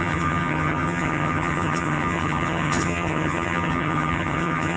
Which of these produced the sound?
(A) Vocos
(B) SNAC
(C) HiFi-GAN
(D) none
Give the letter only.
C